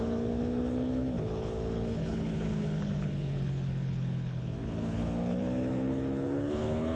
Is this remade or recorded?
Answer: remade